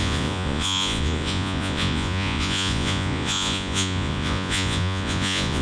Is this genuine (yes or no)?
no